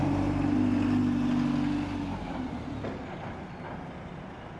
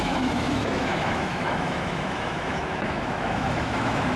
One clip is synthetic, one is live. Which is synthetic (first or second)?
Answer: second